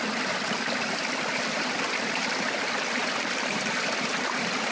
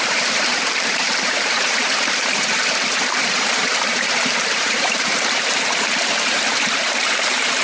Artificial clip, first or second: second